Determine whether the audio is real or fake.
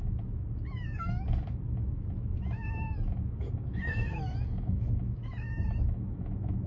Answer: fake